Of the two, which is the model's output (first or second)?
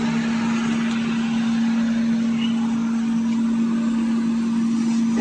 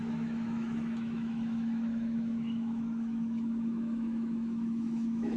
second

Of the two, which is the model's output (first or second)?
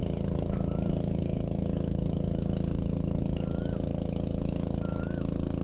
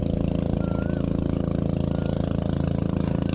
first